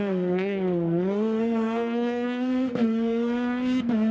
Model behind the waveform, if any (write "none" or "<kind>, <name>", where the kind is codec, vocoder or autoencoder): codec, SNAC